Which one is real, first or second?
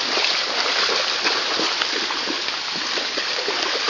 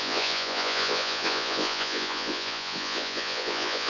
first